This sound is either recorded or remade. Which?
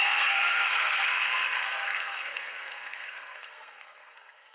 remade